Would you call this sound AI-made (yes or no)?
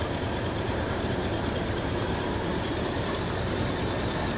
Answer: yes